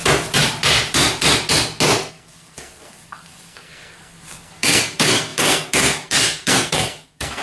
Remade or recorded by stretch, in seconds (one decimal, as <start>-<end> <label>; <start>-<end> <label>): 0.0-2.1 recorded; 2.1-7.4 remade